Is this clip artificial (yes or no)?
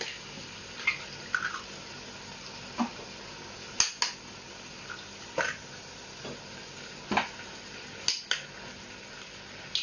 no